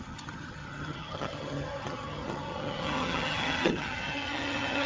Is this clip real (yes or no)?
no